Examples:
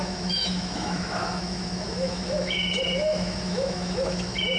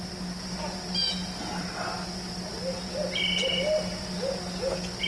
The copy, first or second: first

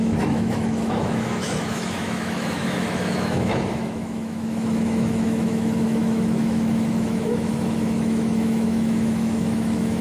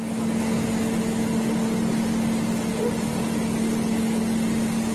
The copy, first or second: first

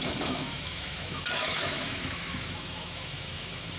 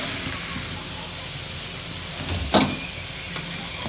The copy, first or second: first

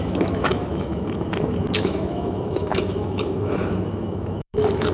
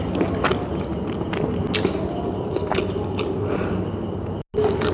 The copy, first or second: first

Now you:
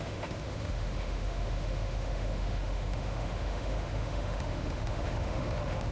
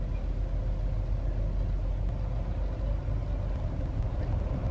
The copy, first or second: first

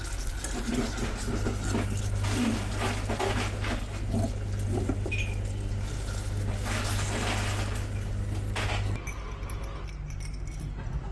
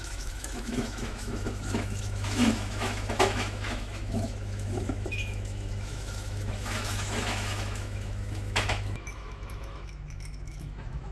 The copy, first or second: second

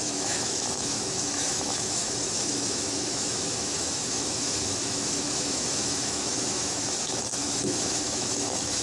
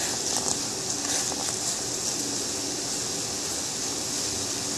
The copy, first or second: first